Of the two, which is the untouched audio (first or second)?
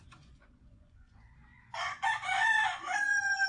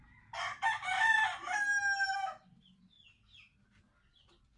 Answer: second